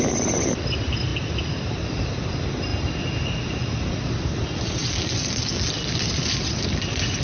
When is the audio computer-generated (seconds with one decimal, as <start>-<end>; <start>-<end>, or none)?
0.0-2.7; 3.6-4.8; 5.7-7.2